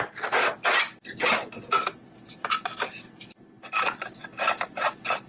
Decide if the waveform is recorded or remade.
recorded